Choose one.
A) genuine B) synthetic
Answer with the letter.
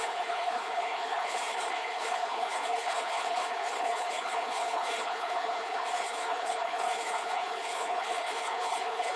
B